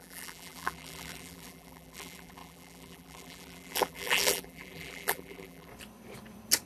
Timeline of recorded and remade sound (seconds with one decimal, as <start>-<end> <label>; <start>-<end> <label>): 0.0-5.7 remade; 5.7-6.7 recorded